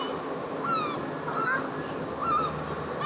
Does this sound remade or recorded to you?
recorded